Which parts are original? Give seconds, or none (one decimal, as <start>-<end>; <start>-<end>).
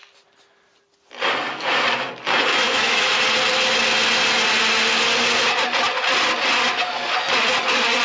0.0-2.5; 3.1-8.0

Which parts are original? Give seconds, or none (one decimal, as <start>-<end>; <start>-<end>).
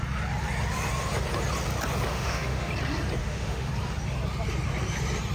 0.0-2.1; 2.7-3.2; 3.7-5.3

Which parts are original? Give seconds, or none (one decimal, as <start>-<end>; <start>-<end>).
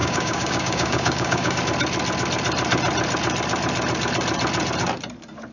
1.6-5.5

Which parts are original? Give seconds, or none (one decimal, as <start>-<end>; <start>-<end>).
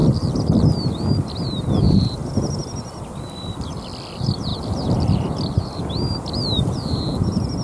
0.0-0.9; 2.2-3.6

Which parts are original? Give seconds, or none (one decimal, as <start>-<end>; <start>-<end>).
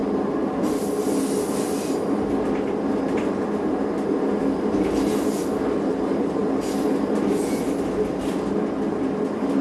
0.0-9.6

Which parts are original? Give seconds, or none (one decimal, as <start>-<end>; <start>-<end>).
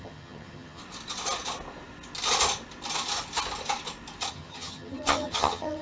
0.8-4.3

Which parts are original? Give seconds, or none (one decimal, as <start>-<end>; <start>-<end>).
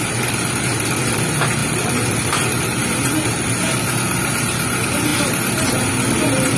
0.0-6.6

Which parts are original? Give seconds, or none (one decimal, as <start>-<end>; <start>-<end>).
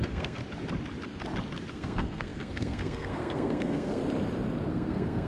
0.4-1.7; 4.0-4.7